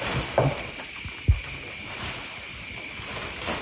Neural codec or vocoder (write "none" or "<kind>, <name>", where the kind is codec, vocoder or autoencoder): none